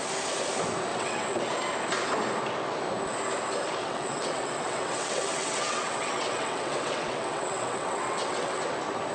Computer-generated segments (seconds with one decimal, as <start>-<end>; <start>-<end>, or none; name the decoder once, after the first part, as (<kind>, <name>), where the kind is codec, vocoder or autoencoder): 0.9-1.4 (vocoder, WaveNeXt); 3.8-8.6